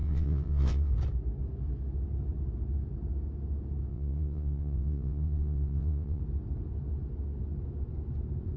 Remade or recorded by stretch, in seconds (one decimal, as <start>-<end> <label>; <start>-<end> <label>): 0.0-0.9 remade; 0.9-3.9 recorded; 3.9-6.2 remade; 6.2-8.6 recorded

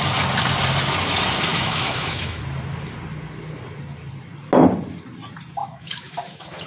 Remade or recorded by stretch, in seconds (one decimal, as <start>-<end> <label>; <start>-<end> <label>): 0.0-1.5 recorded; 1.5-2.4 remade; 2.4-5.6 recorded; 5.6-6.7 remade

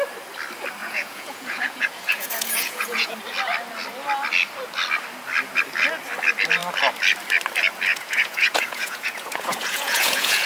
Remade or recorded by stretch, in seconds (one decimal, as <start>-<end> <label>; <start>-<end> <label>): 0.0-0.8 recorded; 0.8-3.1 remade; 3.1-7.9 recorded; 7.9-10.5 remade

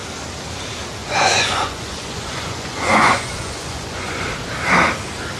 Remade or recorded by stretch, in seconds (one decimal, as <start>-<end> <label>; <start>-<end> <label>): 0.0-1.0 recorded; 1.0-4.2 remade; 4.2-5.4 recorded

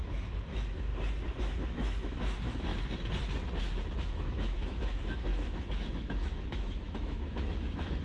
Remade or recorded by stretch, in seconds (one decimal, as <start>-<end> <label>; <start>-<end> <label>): 0.0-0.9 remade; 0.9-1.4 recorded; 1.4-2.7 remade; 2.7-4.0 recorded; 4.0-8.0 remade

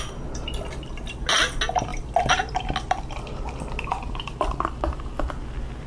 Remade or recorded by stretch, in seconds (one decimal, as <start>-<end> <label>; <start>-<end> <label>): 0.0-5.9 recorded

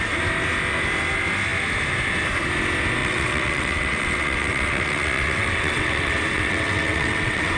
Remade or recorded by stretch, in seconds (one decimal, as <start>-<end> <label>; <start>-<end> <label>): 0.0-3.0 recorded; 3.0-7.6 remade